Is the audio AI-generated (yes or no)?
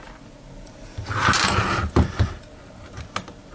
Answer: no